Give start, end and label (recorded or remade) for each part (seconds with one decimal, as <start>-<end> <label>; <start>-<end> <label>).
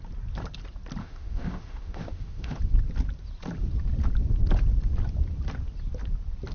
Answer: 0.0-1.0 recorded; 1.0-2.6 remade; 2.6-6.5 recorded